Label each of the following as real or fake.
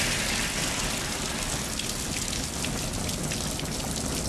real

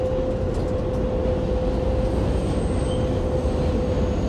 real